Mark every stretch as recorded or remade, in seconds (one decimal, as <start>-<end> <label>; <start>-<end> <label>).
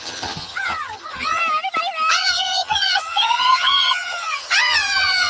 0.0-1.4 remade; 1.4-2.1 recorded; 2.1-5.3 remade